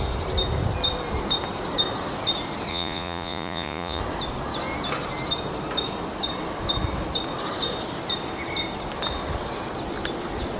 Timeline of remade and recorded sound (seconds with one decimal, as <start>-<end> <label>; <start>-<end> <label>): 0.0-2.7 recorded; 2.7-4.0 remade; 4.0-10.6 recorded